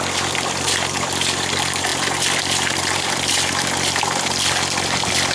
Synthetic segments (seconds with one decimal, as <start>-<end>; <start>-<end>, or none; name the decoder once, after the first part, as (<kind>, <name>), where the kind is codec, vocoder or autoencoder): none